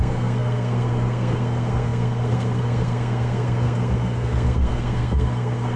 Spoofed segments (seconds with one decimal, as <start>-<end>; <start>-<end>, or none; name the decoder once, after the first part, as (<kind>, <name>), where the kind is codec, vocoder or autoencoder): 0.0-5.8 (codec, SNAC)